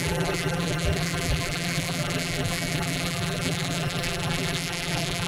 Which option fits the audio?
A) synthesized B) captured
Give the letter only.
A